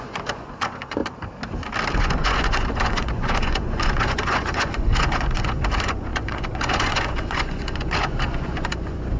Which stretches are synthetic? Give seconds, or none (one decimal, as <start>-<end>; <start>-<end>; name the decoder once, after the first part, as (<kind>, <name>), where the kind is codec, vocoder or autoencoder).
0.0-1.0 (vocoder, Vocos); 1.9-9.2